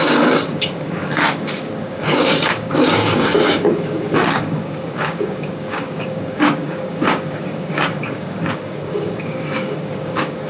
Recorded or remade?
remade